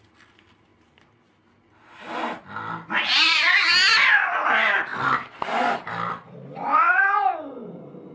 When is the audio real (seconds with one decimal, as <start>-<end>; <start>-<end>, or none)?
0.0-3.9; 4.5-4.9; 6.9-8.1